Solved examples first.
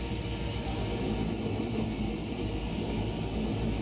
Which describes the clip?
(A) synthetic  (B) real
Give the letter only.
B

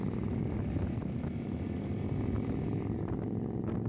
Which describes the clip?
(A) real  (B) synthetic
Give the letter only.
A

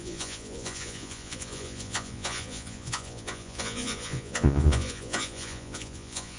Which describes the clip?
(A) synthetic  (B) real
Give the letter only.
A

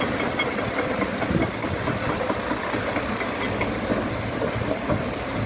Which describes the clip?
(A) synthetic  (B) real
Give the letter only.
B